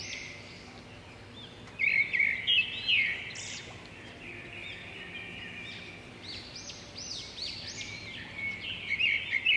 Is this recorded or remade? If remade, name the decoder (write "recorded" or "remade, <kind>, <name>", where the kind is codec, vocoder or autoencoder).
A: recorded